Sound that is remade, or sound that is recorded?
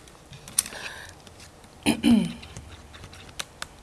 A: recorded